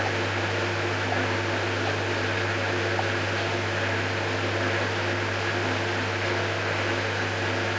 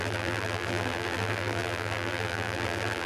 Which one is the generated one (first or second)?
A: second